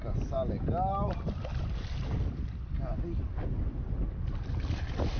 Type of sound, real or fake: real